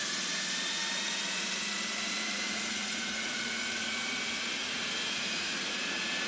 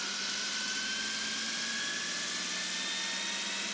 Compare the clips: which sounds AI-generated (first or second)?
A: first